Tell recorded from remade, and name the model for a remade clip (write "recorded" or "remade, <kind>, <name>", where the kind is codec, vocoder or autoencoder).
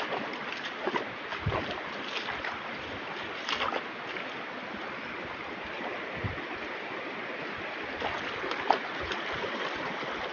recorded